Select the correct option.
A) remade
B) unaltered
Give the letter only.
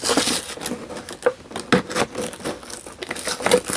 B